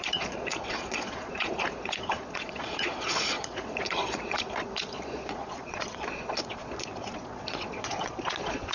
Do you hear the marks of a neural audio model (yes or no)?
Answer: yes